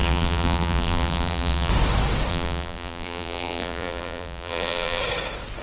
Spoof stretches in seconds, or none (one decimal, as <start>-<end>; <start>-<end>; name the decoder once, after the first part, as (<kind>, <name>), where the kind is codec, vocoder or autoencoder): 0.0-1.7 (vocoder, BigVGAN v2); 2.3-5.0